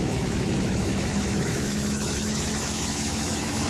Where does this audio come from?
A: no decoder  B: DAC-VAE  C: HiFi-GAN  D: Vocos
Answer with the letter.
B